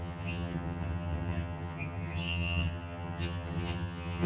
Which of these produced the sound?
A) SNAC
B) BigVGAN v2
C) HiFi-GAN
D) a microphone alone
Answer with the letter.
C